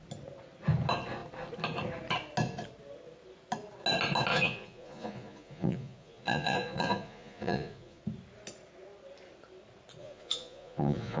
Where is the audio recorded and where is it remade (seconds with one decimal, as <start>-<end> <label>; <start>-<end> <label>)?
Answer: 0.0-4.3 recorded; 4.3-8.0 remade; 8.0-10.0 recorded; 10.0-11.2 remade